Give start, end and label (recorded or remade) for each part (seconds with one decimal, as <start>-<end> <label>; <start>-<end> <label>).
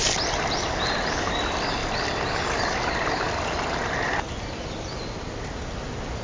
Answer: 0.0-6.2 recorded